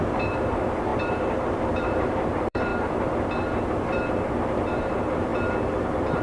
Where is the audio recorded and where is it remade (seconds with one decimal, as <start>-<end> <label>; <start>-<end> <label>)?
0.0-2.7 remade; 2.7-3.7 recorded; 3.7-6.2 remade

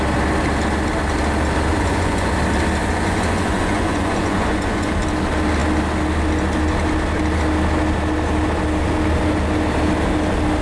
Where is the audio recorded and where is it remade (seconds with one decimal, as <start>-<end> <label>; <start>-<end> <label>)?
0.0-1.7 recorded; 1.7-2.3 remade; 2.3-2.8 recorded; 2.8-4.9 remade; 4.9-10.6 recorded

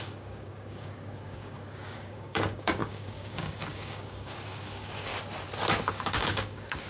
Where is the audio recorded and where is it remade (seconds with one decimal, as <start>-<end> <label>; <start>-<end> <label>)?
0.0-5.1 remade; 5.1-5.9 recorded; 5.9-6.9 remade

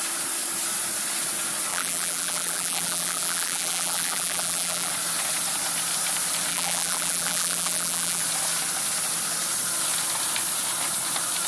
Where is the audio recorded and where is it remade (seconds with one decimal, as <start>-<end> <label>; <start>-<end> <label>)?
0.0-1.7 recorded; 1.7-4.9 remade; 4.9-6.5 recorded; 6.5-8.2 remade; 8.2-11.5 recorded